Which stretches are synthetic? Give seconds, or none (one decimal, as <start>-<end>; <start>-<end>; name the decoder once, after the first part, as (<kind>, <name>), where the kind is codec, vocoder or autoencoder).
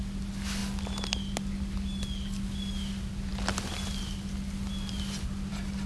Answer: none